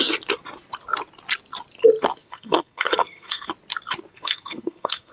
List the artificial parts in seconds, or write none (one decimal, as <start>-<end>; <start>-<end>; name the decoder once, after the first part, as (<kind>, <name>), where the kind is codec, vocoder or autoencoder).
2.2-3.5 (codec, SNAC); 4.1-5.1